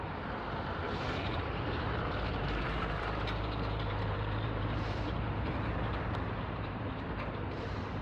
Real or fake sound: fake